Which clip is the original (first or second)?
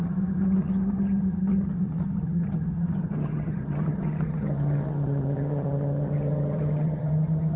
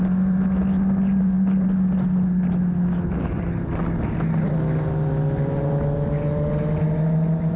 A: second